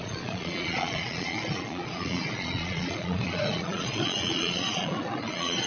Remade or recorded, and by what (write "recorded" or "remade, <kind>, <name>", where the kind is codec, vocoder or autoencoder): remade, vocoder, Vocos